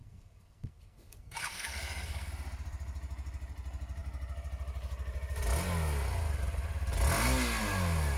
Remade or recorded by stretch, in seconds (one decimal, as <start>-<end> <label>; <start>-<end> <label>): 0.0-2.3 remade; 2.3-8.2 recorded